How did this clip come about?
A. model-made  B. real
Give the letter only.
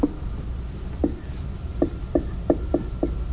B